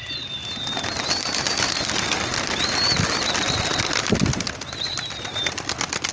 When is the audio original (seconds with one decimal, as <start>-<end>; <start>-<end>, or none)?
0.0-6.1